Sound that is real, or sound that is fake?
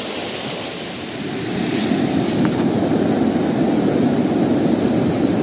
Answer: real